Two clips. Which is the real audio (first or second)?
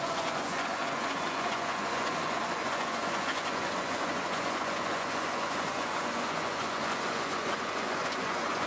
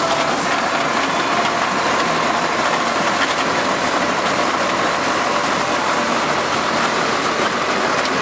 second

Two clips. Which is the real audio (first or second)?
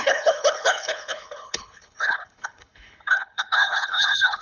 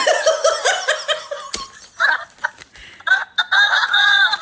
second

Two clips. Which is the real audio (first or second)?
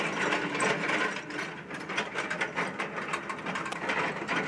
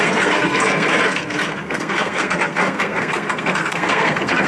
first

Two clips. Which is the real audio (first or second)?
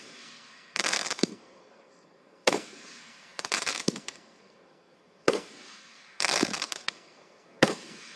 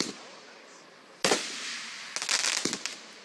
second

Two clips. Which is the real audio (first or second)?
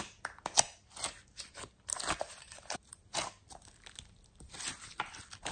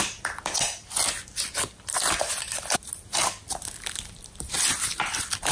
first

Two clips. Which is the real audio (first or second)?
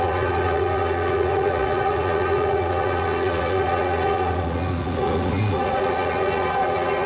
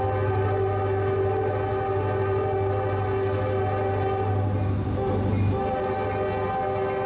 second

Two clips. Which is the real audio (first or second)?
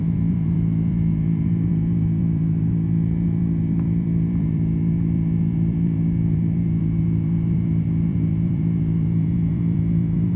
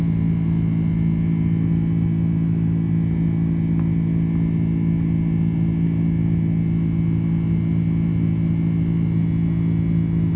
second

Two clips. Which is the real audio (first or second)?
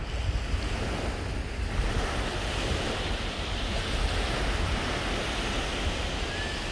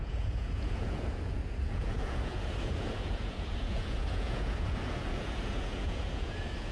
first